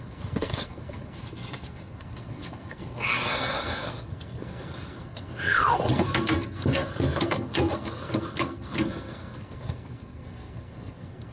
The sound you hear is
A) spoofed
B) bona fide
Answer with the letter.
A